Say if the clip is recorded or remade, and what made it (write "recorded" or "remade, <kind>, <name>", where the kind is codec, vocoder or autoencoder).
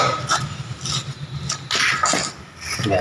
recorded